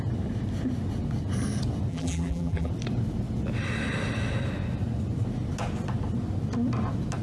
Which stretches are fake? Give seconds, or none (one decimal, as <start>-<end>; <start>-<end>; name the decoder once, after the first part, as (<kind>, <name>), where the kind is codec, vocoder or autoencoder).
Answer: 1.9-2.7 (vocoder, BigVGAN v2)